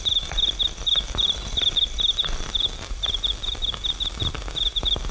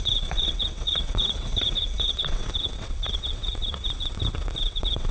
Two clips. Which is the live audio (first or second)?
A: first